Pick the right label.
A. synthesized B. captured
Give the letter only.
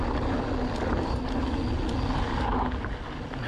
B